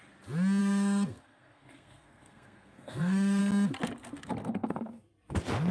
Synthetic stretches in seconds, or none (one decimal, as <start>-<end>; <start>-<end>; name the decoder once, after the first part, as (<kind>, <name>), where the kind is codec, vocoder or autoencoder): 0.6-3.4 (codec, SNAC); 4.4-5.0